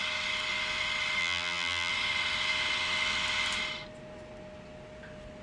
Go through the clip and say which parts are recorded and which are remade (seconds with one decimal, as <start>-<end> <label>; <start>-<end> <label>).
0.0-1.2 recorded; 1.2-1.9 remade; 1.9-5.4 recorded